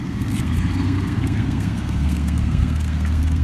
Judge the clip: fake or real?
fake